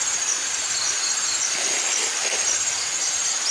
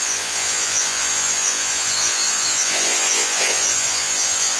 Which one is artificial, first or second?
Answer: second